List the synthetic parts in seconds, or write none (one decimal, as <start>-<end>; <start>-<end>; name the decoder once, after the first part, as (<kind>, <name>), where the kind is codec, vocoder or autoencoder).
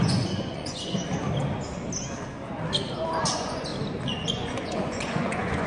0.0-0.9 (vocoder, Vocos); 3.3-3.7; 4.3-5.7